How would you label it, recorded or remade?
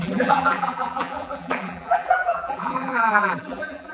remade